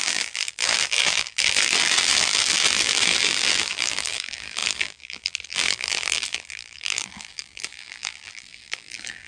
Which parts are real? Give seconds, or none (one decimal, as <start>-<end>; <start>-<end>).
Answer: none